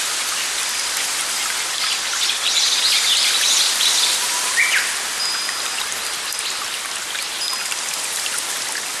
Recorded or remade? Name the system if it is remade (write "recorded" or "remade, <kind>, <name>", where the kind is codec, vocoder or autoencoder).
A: recorded